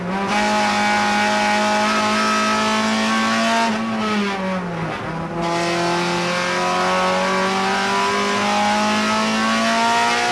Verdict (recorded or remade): recorded